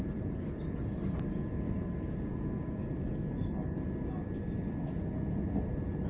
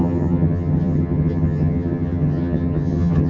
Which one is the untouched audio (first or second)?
first